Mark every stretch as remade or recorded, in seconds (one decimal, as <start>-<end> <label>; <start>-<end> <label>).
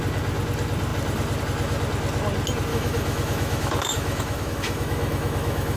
0.0-2.7 recorded; 2.7-5.8 remade